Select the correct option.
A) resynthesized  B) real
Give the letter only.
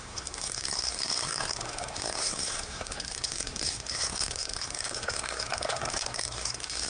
A